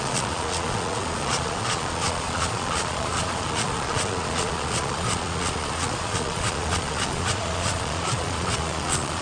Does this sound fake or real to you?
fake